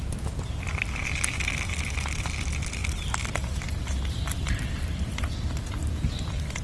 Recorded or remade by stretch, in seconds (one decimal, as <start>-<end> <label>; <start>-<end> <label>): 0.0-2.8 remade; 2.8-3.6 recorded; 3.6-6.6 remade